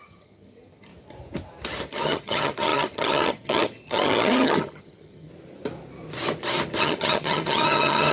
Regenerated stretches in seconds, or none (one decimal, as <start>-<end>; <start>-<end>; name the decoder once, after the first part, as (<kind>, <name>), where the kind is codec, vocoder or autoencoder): 0.0-0.9 (vocoder, HiFi-GAN); 1.9-5.3; 6.8-8.1